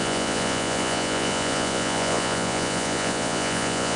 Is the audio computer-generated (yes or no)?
yes